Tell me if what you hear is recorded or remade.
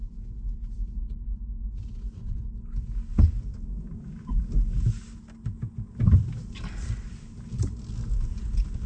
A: recorded